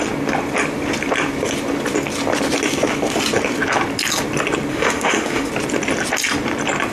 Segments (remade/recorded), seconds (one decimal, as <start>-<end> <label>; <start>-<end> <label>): 0.0-4.7 recorded; 4.7-5.5 remade; 5.5-6.9 recorded